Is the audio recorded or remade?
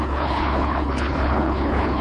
remade